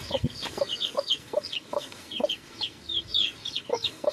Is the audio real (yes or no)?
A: no